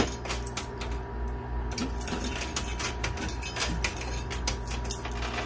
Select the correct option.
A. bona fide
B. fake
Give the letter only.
A